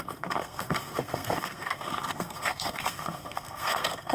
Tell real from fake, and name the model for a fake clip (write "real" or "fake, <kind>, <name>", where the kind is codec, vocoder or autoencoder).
fake, codec, SNAC